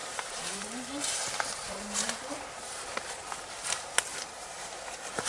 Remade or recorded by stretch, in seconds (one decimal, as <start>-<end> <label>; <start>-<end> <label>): 0.0-2.8 remade; 2.8-4.1 recorded; 4.1-4.7 remade; 4.7-5.3 recorded